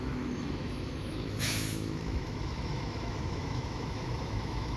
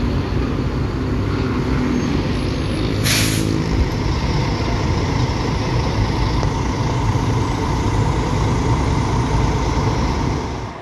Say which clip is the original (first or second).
second